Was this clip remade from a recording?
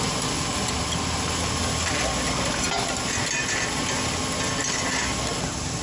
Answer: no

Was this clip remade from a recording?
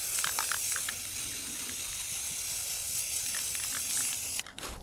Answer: no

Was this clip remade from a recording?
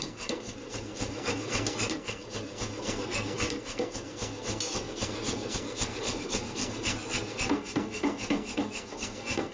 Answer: yes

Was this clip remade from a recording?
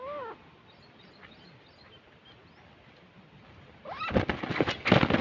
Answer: no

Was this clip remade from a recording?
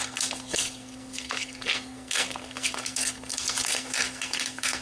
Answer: yes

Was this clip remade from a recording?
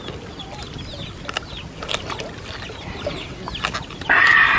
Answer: no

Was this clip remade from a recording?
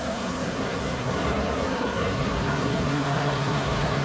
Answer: yes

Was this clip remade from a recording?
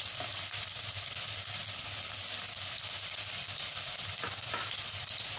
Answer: no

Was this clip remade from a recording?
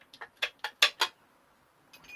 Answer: no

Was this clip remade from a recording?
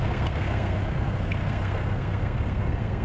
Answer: yes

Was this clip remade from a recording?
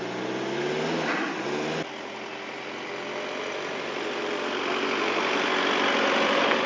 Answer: no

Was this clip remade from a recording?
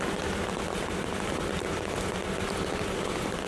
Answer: no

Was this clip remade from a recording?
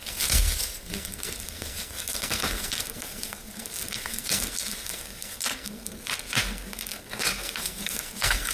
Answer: yes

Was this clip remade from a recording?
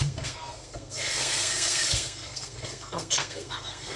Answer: yes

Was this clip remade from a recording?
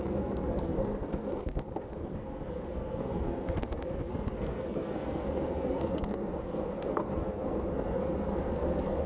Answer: yes